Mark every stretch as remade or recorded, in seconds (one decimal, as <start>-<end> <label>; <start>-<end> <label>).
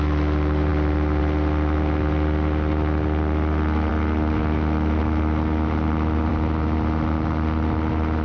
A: 0.0-8.2 recorded